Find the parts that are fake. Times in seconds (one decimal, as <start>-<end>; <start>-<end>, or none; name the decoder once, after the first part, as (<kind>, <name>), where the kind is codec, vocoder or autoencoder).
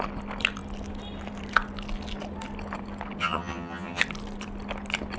3.2-4.0 (vocoder, HiFi-GAN)